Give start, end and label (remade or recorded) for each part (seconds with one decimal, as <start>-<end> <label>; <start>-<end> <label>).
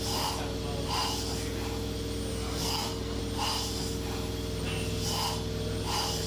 0.0-2.3 recorded; 2.3-3.2 remade; 3.2-6.3 recorded